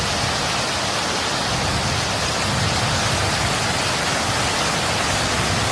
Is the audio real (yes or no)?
yes